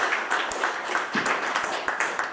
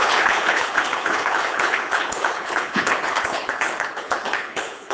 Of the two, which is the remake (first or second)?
second